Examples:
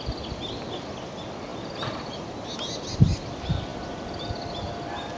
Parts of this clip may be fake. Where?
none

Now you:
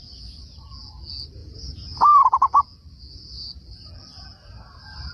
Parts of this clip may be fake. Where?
1.4-2.6 (vocoder, BigVGAN v2)